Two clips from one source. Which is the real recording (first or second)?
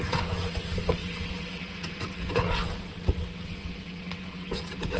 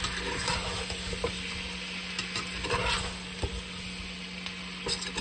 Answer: second